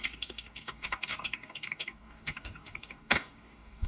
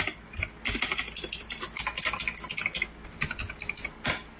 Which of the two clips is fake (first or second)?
first